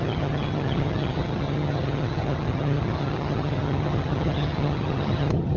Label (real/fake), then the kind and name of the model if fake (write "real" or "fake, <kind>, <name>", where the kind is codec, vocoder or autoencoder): fake, vocoder, HiFi-GAN